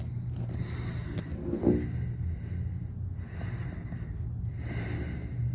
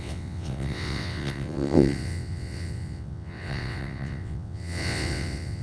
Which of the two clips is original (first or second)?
first